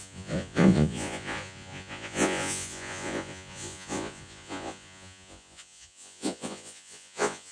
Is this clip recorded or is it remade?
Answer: remade